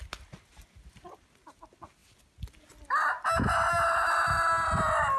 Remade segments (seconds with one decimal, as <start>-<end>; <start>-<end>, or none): none